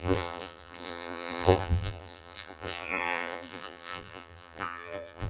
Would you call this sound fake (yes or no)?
yes